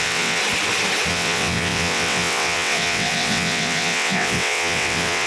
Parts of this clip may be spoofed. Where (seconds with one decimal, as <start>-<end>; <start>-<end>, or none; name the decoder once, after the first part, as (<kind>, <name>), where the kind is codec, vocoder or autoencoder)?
0.0-0.4 (vocoder, WaveNeXt); 1.1-5.3